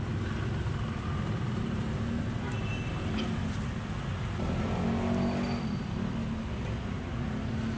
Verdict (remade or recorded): recorded